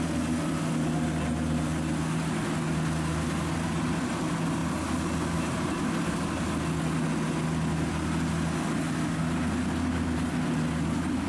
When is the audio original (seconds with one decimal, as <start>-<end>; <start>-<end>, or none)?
0.0-11.3